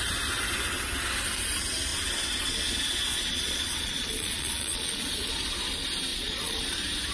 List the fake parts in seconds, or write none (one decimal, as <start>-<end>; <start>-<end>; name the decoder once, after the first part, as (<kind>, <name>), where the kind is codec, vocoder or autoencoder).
3.1-5.3 (vocoder, Vocos); 6.1-6.6